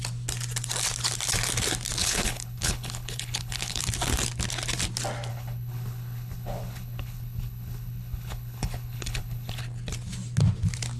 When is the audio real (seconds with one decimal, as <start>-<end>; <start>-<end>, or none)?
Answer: 0.0-2.0; 3.8-5.3; 9.6-11.0